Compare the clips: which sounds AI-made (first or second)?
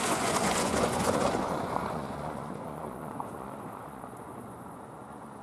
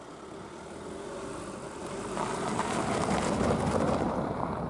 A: first